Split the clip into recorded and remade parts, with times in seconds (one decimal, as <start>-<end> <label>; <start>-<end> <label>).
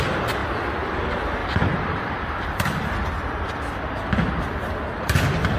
0.0-1.4 recorded; 1.4-4.4 remade; 4.4-5.6 recorded